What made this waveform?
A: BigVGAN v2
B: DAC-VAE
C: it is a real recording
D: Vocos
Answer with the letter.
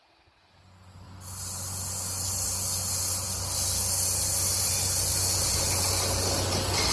C